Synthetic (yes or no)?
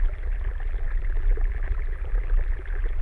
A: yes